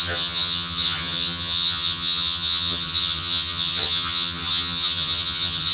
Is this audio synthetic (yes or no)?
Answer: yes